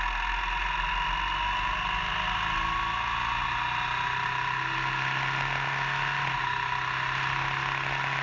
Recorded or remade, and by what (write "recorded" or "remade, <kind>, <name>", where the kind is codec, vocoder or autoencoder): recorded